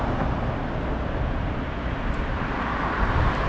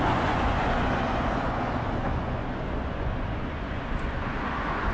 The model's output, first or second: second